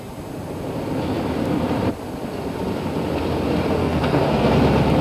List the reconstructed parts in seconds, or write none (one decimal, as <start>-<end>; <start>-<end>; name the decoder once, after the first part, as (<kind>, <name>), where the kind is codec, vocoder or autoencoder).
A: 3.8-4.5 (codec, SNAC)